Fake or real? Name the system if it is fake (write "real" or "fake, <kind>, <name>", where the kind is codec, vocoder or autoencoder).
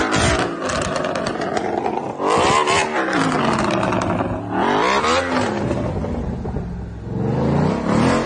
real